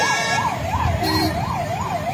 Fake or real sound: fake